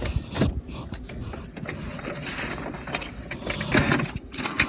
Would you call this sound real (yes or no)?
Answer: yes